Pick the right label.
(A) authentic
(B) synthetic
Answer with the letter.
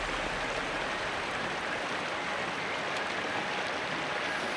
A